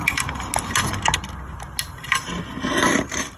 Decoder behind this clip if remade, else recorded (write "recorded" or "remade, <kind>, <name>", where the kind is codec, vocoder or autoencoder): recorded